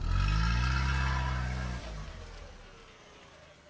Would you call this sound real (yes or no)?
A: yes